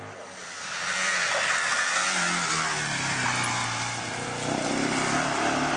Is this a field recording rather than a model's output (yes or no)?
yes